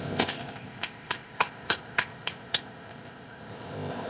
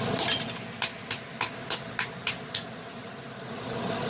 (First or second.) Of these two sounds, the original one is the second